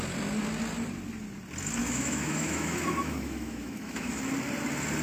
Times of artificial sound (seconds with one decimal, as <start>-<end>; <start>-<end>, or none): 1.8-4.2